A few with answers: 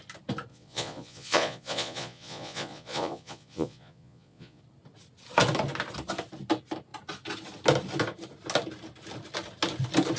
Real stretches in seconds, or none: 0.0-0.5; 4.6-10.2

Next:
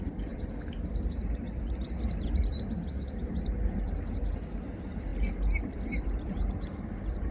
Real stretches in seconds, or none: 0.0-7.3

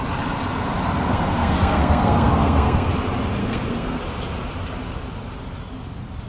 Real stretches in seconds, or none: 0.0-1.1; 2.9-3.4; 4.0-6.3

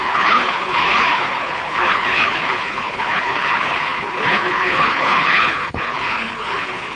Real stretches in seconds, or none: none

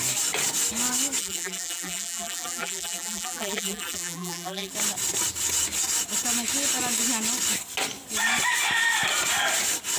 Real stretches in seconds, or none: 0.0-1.2; 4.7-10.0

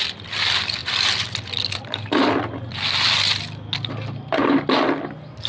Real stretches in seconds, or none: 0.0-5.5

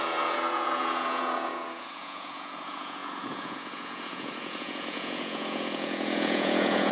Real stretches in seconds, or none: none